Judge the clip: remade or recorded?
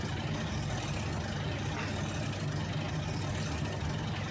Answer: recorded